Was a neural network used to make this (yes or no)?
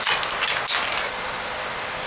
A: no